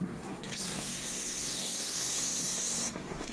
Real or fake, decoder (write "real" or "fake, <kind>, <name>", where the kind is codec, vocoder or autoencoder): fake, codec, SNAC